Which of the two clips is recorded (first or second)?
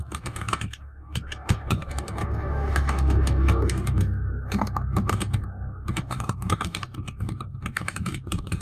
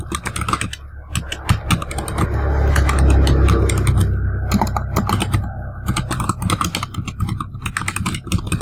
second